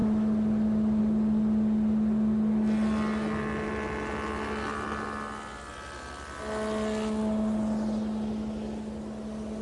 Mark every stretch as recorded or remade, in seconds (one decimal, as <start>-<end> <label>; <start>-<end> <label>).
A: 0.0-9.6 recorded